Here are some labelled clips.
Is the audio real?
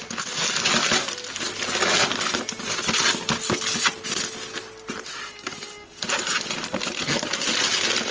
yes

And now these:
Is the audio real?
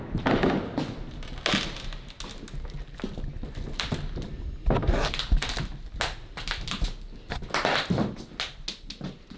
yes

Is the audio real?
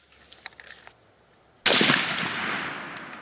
yes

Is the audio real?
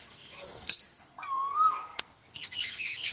no